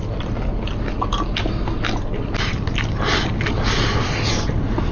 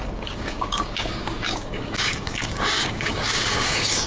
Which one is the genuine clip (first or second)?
first